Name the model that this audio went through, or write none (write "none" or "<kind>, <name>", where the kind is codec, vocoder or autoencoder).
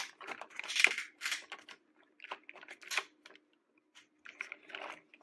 none